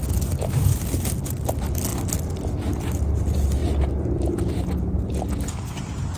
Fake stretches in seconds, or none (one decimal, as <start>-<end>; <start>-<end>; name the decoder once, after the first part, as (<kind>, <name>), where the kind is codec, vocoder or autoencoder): none